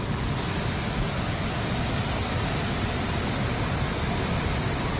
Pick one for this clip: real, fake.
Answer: real